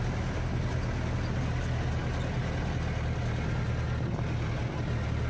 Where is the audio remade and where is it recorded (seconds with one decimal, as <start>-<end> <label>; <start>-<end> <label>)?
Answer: 0.0-5.3 recorded